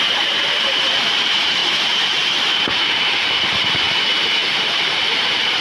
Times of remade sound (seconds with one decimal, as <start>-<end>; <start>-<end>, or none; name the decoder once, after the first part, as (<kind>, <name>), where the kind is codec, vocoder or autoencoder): 0.0-5.6 (vocoder, BigVGAN v2)